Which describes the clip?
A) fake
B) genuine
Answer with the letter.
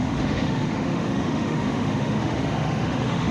A